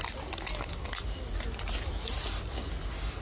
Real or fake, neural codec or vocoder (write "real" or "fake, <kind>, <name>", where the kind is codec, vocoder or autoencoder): real